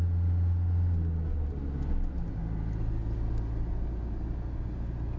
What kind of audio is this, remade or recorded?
recorded